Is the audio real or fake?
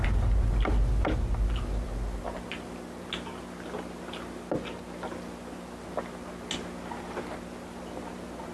real